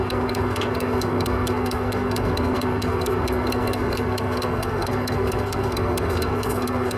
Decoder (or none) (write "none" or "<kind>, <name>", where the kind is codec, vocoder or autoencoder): codec, SNAC